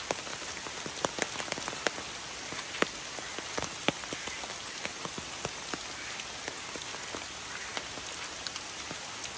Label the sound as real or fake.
real